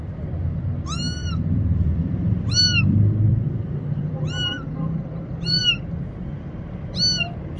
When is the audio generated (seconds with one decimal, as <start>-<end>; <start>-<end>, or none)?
1.2-5.6